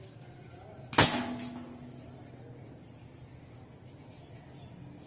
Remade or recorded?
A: recorded